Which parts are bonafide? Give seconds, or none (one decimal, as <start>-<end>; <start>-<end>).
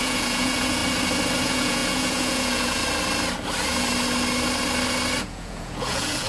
0.8-1.4; 2.8-5.2